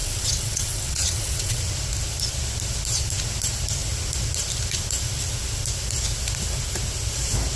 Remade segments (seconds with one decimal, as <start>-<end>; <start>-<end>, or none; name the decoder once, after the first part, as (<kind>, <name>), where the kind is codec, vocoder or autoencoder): 0.0-1.7 (vocoder, WaveNeXt)